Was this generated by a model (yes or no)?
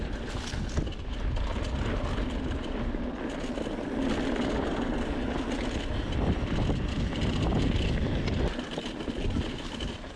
no